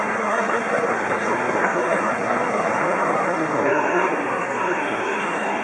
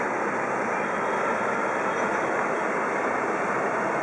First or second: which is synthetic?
first